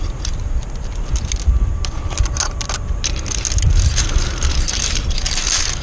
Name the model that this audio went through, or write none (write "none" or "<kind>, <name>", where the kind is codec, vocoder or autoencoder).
none